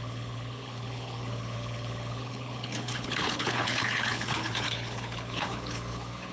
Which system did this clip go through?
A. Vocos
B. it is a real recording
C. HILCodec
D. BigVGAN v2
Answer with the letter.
C